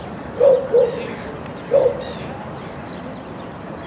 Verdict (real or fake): real